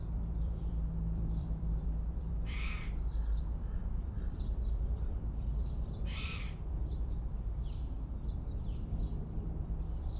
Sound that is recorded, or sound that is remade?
remade